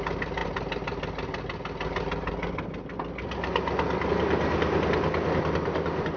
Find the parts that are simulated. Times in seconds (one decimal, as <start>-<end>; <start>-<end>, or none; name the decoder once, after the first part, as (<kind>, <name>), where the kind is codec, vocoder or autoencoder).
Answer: none

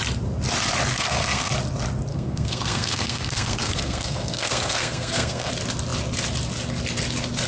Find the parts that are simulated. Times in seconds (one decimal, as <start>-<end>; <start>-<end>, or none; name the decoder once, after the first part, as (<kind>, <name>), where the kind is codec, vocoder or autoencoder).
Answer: 0.9-1.5 (codec, SNAC); 2.1-5.5

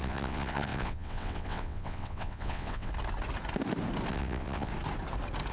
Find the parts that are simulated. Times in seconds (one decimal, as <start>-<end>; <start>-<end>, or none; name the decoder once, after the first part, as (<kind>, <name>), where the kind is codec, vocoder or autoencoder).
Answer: 0.0-2.9 (vocoder, WaveNeXt); 4.1-4.7